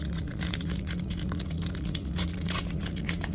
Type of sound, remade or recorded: remade